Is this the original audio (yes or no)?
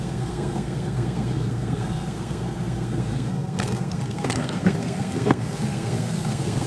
no